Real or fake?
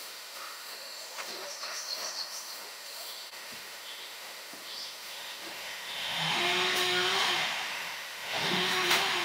fake